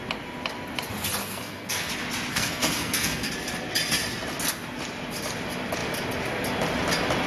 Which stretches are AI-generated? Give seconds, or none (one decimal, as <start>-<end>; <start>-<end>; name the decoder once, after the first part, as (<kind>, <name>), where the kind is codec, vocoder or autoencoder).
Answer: 1.2-1.9 (codec, SNAC); 2.3-3.3